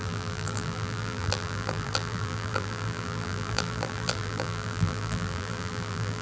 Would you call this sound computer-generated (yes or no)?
yes